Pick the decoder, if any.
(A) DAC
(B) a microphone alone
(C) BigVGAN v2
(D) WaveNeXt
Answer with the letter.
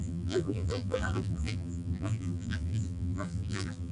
C